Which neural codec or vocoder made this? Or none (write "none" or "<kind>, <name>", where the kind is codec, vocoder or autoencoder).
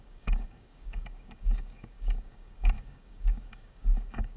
codec, DAC